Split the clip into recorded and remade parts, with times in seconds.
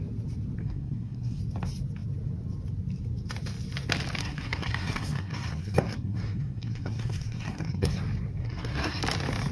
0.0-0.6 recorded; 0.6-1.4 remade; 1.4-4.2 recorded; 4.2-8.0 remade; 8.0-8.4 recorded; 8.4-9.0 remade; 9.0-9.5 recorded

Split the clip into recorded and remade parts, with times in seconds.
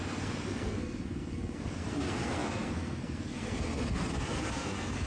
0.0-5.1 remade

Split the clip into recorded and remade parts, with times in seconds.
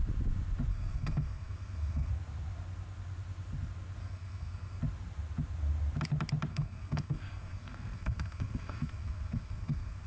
0.0-0.7 recorded; 0.7-2.1 remade; 2.1-4.0 recorded; 4.0-4.8 remade; 4.8-6.5 recorded; 6.5-10.1 remade